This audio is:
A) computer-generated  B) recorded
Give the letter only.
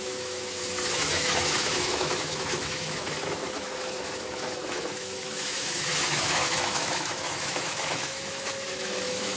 A